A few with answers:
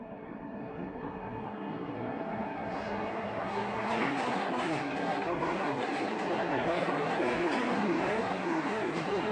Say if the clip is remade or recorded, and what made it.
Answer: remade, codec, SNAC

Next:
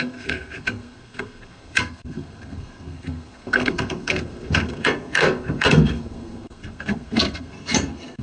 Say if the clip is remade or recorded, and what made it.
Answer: remade, codec, SNAC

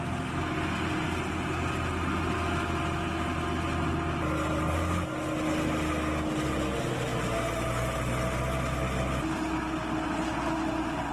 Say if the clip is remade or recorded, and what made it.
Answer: recorded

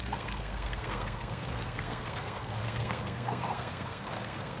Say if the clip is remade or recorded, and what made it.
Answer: remade, codec, SNAC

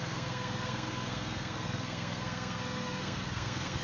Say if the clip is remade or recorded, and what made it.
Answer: remade, codec, SNAC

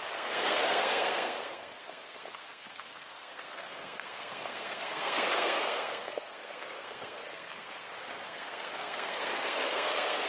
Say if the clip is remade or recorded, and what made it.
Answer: remade, codec, SNAC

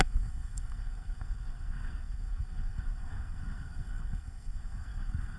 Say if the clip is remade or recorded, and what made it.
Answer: remade, codec, SNAC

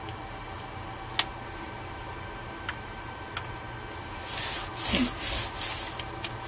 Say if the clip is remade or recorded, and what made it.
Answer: recorded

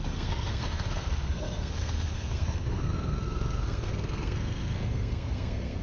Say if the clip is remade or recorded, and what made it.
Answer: remade, codec, SNAC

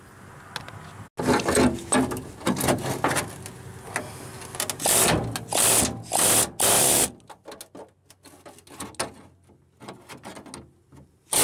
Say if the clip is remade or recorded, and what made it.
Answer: recorded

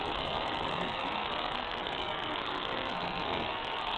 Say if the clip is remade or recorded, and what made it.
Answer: remade, codec, SNAC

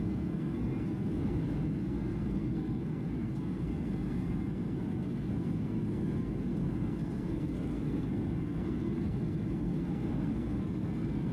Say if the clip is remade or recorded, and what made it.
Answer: remade, codec, SNAC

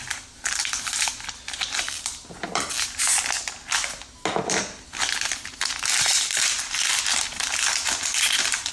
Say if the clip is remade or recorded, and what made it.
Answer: recorded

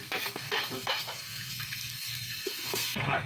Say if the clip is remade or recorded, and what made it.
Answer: remade, codec, SNAC